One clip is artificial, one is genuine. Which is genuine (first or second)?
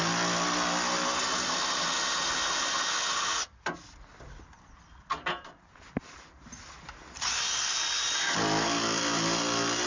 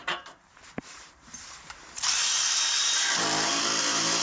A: first